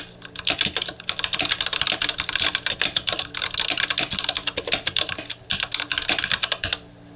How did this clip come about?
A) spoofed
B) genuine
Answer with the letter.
B